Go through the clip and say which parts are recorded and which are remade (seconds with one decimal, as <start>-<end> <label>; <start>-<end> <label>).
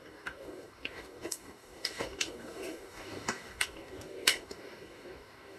0.0-5.6 remade